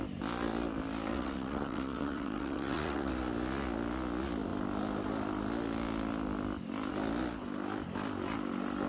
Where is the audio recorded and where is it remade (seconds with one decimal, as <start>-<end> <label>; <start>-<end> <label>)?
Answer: 0.0-1.1 recorded; 1.1-3.1 remade; 3.1-8.9 recorded

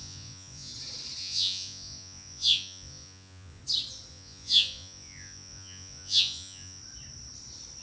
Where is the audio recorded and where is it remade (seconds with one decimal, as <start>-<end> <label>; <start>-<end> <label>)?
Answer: 0.0-0.7 remade; 0.7-1.2 recorded; 1.2-3.6 remade; 3.6-4.1 recorded; 4.1-6.8 remade; 6.8-7.8 recorded